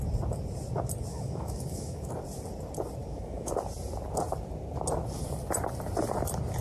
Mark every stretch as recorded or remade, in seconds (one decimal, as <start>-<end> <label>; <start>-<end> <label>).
0.0-1.1 recorded; 1.1-2.1 remade; 2.1-3.0 recorded; 3.0-3.5 remade; 3.5-6.6 recorded